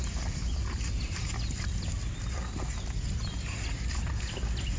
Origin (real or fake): real